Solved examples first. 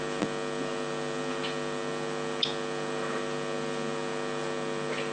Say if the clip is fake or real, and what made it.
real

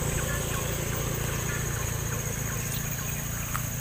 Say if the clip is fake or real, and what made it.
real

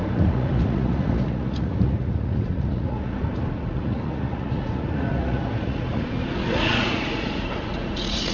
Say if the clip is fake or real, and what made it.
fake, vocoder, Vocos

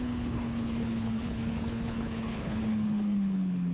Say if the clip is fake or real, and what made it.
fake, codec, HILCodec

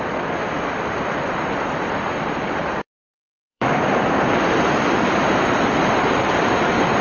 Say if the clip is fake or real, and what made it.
fake, vocoder, BigVGAN v2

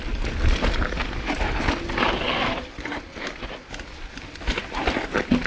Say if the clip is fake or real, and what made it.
real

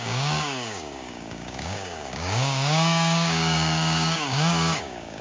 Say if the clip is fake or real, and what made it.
fake, codec, DAC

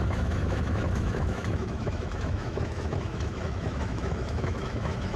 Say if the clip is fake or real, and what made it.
fake, autoencoder, DAC-VAE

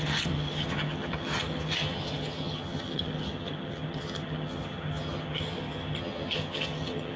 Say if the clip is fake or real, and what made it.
fake, vocoder, HiFi-GAN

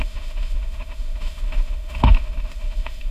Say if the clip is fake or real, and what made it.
fake, autoencoder, DAC-VAE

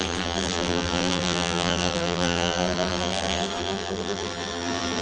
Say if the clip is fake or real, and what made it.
fake, vocoder, BigVGAN v2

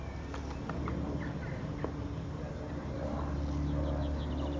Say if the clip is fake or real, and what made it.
real